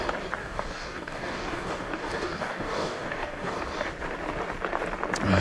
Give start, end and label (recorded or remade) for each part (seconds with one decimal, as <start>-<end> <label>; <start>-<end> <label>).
0.0-0.4 recorded; 0.4-3.6 remade; 3.6-5.4 recorded